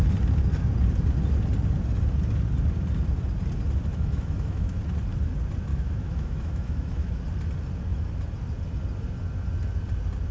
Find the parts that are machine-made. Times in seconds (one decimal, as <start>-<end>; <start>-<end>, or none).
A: 3.9-4.8; 5.7-7.2